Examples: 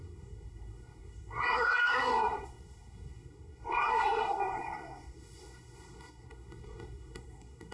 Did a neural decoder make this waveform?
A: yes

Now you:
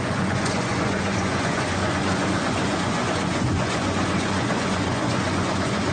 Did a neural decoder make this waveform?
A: yes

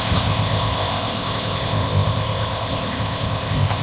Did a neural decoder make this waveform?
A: yes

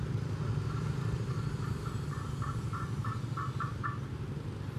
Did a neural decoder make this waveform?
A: no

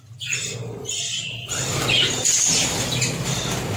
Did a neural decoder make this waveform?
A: no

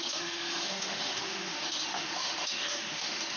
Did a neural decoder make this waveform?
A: yes